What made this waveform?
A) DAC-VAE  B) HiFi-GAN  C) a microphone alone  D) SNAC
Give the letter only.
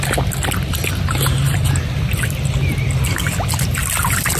C